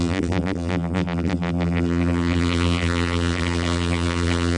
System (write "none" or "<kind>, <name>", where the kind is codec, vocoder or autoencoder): vocoder, BigVGAN v2